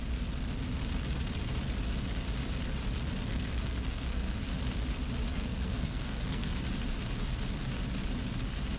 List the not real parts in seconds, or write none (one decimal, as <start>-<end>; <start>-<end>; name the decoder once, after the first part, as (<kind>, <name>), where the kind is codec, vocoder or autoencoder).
3.3-4.4 (codec, SNAC); 5.3-6.6

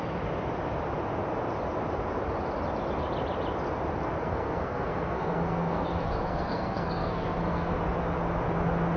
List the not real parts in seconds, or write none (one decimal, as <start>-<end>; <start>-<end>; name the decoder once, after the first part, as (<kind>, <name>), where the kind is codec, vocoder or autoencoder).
4.2-7.8 (codec, SNAC)

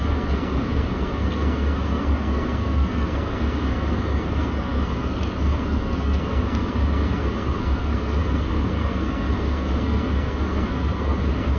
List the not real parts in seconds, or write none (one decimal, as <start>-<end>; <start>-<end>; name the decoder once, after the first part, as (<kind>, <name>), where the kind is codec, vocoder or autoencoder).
0.0-11.6 (codec, SNAC)

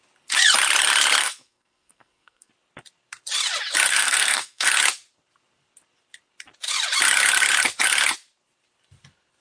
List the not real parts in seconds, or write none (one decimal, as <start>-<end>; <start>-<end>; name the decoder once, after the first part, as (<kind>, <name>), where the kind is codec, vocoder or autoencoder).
1.2-2.5 (codec, SNAC); 3.9-4.7